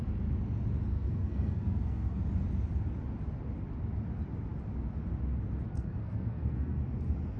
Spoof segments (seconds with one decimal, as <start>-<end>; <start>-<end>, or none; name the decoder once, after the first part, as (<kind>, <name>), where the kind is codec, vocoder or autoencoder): 0.9-2.2 (codec, SNAC); 5.7-6.8